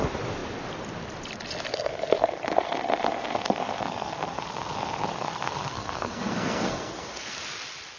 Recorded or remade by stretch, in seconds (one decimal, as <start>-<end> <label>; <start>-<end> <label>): 0.0-1.7 recorded; 1.7-4.4 remade; 4.4-5.1 recorded; 5.1-7.4 remade; 7.4-8.0 recorded